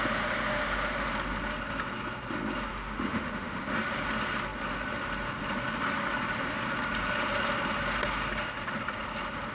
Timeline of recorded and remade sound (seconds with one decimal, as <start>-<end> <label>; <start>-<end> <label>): 0.0-2.7 recorded; 2.7-3.6 remade; 3.6-9.5 recorded